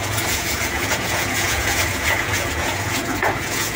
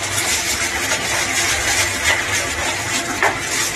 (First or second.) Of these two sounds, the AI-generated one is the first